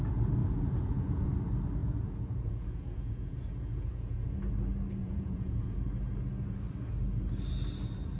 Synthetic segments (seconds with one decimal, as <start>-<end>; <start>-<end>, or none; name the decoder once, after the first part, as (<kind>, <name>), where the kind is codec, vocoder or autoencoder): 0.4-1.3 (vocoder, Vocos); 1.8-4.3; 5.0-5.9